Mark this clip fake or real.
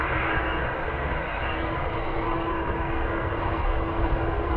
fake